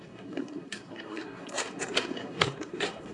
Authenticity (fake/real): fake